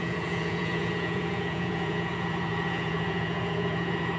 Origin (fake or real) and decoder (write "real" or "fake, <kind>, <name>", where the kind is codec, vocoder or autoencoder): fake, vocoder, Vocos